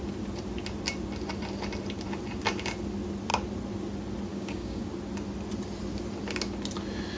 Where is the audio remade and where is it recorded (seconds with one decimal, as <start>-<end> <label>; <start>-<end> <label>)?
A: 0.0-4.3 recorded; 4.3-4.8 remade; 4.8-7.2 recorded